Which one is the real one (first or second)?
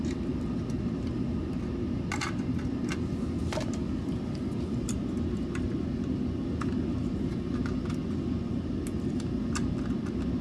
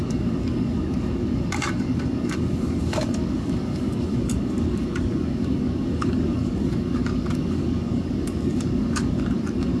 first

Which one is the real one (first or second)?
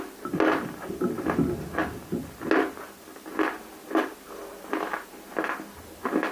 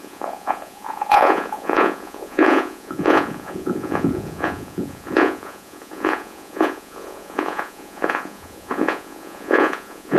first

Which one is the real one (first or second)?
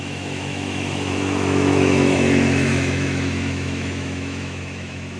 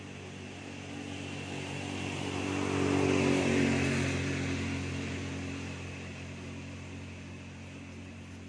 second